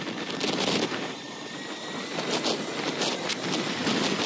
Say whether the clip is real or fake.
real